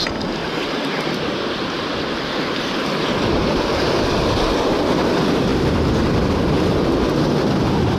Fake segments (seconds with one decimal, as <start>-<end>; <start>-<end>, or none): 0.4-2.4